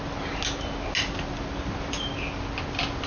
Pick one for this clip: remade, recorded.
recorded